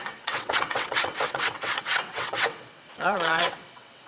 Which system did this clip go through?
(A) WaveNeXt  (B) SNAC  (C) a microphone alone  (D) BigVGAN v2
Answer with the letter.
A